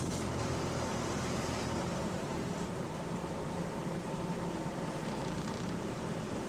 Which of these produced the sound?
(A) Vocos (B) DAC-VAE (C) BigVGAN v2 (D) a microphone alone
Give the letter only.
C